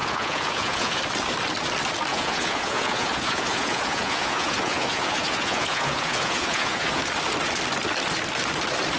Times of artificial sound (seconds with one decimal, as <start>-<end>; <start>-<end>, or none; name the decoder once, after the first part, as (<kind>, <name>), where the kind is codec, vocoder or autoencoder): 0.0-1.0 (vocoder, Vocos); 2.1-7.0